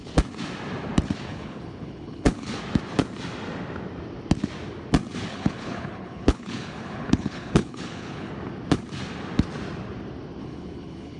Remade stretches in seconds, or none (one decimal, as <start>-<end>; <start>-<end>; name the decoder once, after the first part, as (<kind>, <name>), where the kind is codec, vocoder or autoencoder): 1.3-2.6 (codec, HILCodec); 5.3-8.3; 10.4-11.2